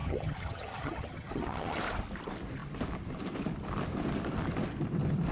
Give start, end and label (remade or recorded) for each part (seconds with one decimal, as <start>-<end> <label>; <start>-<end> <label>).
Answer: 0.0-1.8 remade; 1.8-5.3 recorded